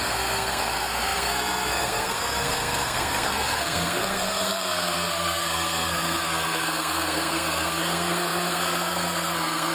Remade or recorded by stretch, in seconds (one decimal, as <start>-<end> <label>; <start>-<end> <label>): 0.0-9.7 remade